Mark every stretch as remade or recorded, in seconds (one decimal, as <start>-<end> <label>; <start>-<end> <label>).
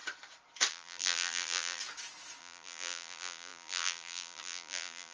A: 0.0-0.7 recorded; 0.7-1.8 remade; 1.8-2.4 recorded; 2.4-5.1 remade